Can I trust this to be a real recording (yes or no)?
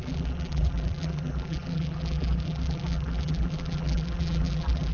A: no